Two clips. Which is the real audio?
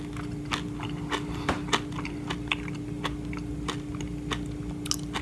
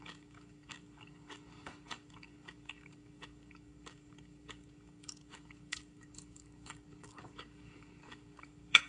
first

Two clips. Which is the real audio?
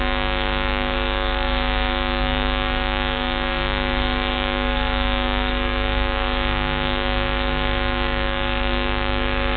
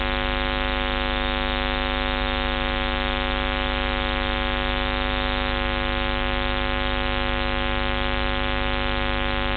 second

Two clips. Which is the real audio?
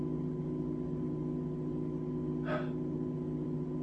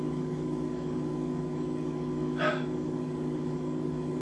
first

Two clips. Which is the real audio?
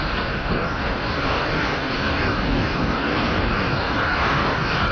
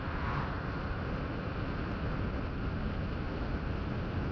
second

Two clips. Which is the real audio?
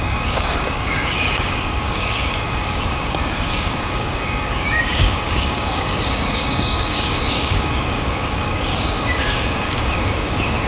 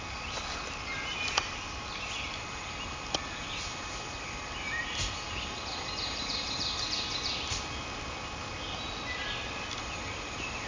second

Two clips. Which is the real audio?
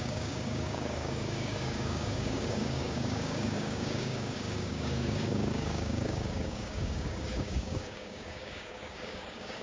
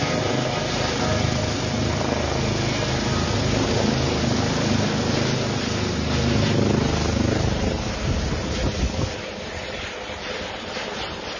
second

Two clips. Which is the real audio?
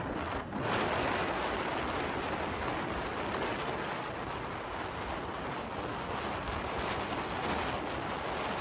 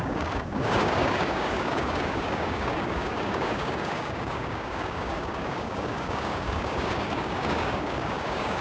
first